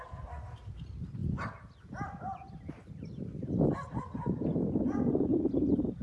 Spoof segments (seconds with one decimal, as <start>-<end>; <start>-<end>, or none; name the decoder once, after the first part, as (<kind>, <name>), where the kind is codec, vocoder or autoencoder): none